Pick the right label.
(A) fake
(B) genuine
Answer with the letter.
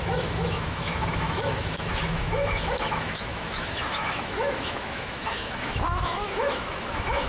A